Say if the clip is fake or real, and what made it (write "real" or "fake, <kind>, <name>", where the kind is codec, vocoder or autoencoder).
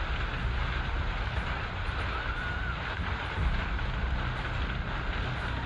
real